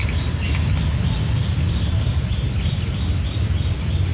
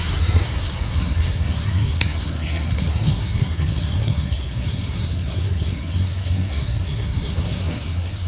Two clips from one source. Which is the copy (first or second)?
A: second